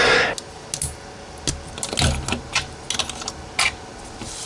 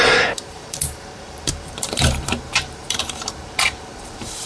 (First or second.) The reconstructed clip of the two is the second